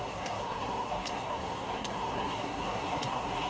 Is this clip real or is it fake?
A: fake